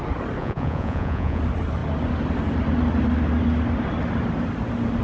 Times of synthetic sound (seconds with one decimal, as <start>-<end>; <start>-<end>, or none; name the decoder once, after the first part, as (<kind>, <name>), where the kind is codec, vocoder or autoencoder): 0.4-1.4 (vocoder, Vocos)